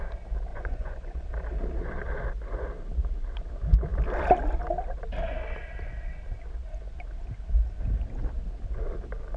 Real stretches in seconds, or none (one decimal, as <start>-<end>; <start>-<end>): 0.0-0.5; 1.3-9.4